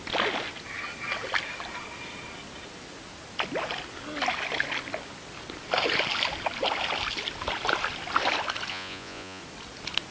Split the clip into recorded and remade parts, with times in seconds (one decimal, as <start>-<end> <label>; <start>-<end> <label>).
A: 0.0-8.7 recorded; 8.7-9.4 remade; 9.4-10.1 recorded